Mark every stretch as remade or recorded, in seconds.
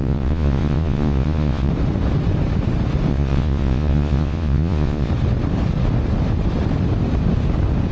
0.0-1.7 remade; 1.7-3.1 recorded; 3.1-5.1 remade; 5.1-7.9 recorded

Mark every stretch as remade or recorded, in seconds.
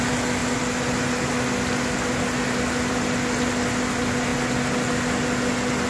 0.0-5.9 recorded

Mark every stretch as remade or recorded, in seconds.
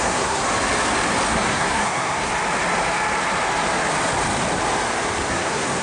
0.0-0.4 remade; 0.4-1.3 recorded; 1.3-2.3 remade; 2.3-5.3 recorded; 5.3-5.8 remade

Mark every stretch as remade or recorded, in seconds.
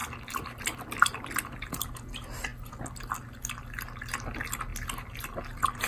0.0-5.9 recorded